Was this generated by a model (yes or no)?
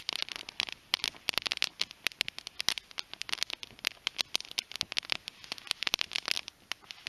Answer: no